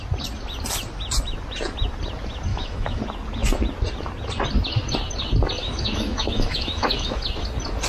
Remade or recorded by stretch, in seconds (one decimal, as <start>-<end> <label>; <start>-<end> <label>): 0.0-2.5 recorded; 2.5-3.0 remade; 3.0-5.6 recorded; 5.6-7.2 remade; 7.2-7.9 recorded